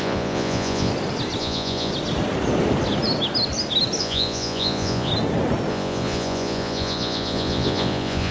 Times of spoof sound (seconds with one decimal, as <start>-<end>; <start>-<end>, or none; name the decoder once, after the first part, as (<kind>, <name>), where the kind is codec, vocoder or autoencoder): 0.0-0.9 (vocoder, Vocos); 1.4-1.9; 4.0-5.1; 5.7-8.3

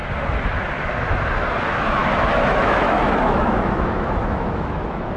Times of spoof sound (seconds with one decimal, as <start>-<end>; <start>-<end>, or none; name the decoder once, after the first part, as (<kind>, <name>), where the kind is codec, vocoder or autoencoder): 1.6-5.2 (autoencoder, DAC-VAE)

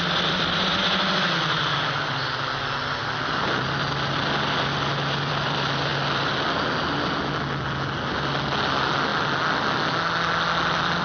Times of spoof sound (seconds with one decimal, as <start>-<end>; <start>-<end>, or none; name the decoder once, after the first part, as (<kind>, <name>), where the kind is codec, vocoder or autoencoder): none

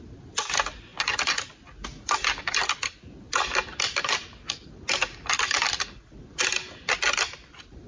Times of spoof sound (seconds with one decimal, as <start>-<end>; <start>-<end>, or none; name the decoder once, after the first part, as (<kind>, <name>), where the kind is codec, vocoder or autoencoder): none

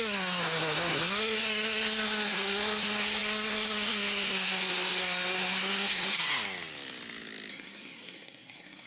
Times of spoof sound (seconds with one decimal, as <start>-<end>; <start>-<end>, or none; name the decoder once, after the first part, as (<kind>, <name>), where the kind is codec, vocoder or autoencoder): 0.0-6.3 (codec, SNAC); 7.5-8.9

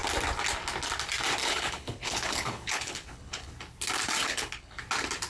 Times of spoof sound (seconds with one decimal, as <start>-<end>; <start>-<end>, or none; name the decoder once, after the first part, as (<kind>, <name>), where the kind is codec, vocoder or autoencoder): 1.4-3.5 (codec, HILCodec); 4.2-4.8

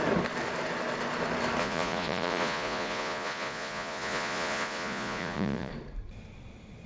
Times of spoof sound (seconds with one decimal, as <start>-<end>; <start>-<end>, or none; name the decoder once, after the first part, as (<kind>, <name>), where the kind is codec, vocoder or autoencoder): 1.6-5.7 (vocoder, Vocos)